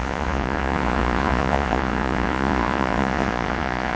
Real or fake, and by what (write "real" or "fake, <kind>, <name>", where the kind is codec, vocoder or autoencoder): fake, vocoder, Vocos